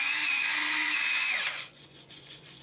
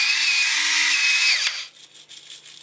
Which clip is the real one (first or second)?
second